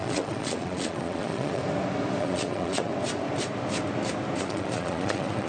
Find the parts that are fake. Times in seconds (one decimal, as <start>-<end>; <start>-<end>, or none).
0.0-1.6; 2.2-2.9; 4.4-5.5